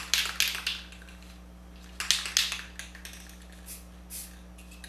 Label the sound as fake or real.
real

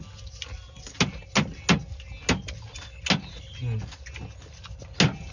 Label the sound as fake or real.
real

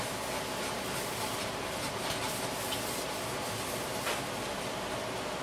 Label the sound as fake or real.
real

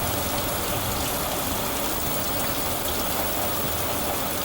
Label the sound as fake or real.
real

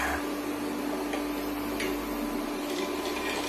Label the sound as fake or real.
real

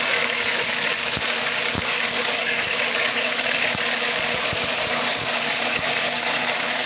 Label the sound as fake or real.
fake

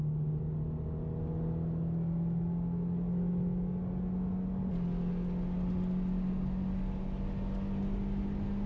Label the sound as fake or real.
real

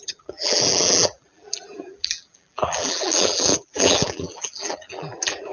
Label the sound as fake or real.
fake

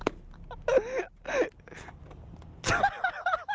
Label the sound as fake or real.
real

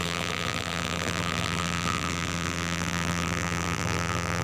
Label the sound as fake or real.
fake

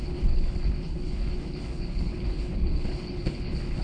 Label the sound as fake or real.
fake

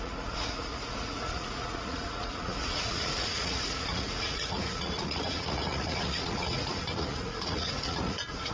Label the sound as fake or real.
fake